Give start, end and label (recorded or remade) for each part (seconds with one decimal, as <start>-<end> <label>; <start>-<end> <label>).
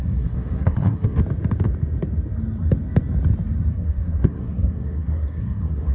0.0-1.2 remade; 1.2-3.7 recorded; 3.7-5.9 remade